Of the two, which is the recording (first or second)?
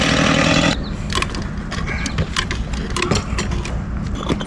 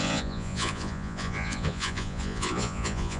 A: first